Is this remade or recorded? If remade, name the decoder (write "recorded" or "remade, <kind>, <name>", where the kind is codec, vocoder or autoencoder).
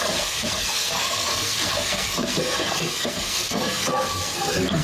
remade, codec, SNAC